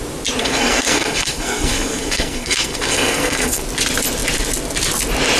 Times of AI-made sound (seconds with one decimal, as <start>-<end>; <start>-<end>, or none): 0.4-3.6